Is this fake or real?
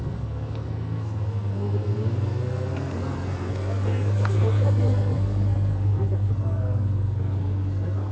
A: fake